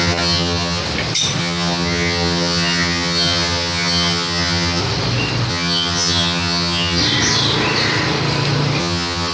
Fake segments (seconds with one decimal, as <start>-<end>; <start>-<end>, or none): 0.0-0.8; 1.4-4.8; 5.5-7.0; 8.8-9.3